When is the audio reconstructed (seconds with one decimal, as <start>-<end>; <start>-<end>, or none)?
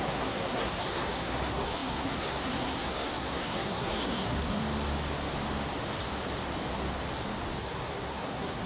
0.0-4.6; 7.6-8.7